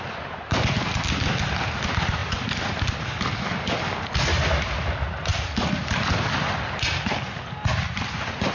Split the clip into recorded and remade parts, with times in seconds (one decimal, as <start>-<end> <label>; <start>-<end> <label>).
0.0-2.2 recorded; 2.2-3.4 remade; 3.4-5.3 recorded; 5.3-6.3 remade; 6.3-8.5 recorded